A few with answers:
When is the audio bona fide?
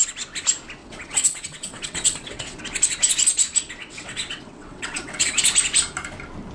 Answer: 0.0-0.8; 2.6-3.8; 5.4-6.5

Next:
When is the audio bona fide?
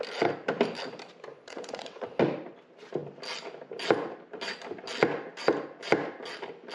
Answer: 0.0-1.3; 2.2-6.7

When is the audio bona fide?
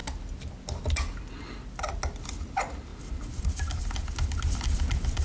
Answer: 0.0-5.2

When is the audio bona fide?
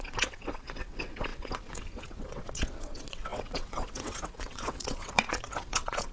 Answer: none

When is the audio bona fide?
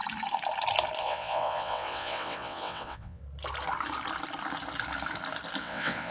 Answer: 0.0-1.0; 3.2-5.6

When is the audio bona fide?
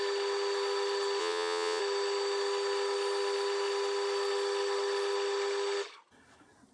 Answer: 0.0-1.2; 1.8-6.7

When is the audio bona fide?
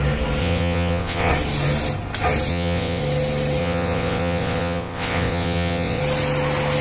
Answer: 0.0-0.4; 1.3-2.5; 3.0-3.6; 6.0-6.8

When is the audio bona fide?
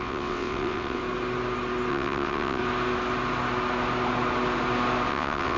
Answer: 1.0-1.9; 2.6-5.1